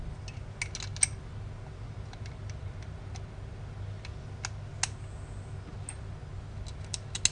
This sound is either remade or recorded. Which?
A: recorded